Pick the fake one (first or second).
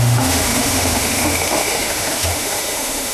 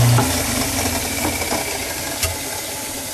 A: first